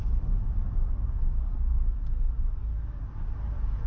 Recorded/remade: recorded